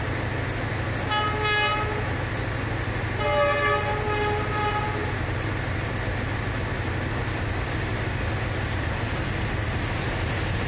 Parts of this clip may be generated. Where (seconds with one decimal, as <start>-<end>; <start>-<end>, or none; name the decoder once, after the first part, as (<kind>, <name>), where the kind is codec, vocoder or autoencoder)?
none